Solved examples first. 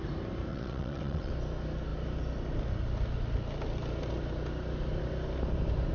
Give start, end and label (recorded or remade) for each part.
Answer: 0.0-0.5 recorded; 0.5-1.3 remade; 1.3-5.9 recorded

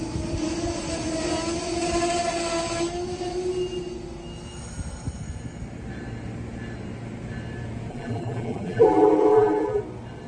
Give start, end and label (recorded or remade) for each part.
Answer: 0.0-7.9 recorded; 7.9-9.8 remade; 9.8-10.3 recorded

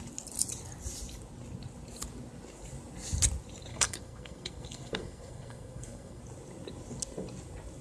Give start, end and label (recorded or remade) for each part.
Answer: 0.0-3.7 recorded; 3.7-6.2 remade; 6.2-7.8 recorded

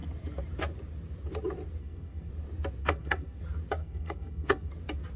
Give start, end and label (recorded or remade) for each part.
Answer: 0.0-1.8 recorded; 1.8-2.3 remade; 2.3-2.8 recorded; 2.8-3.4 remade; 3.4-3.8 recorded; 3.8-4.7 remade; 4.7-5.2 recorded

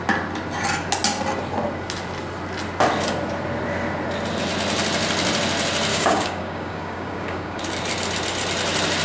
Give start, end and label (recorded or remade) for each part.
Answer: 0.0-5.9 recorded; 5.9-7.6 remade; 7.6-9.0 recorded

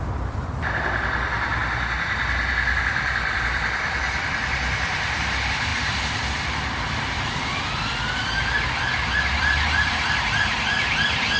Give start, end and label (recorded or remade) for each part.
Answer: 0.0-1.5 remade; 1.5-2.5 recorded; 2.5-11.4 remade

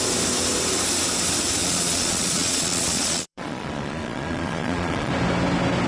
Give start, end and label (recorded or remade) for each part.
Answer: 0.0-1.6 recorded; 1.6-5.1 remade; 5.1-5.9 recorded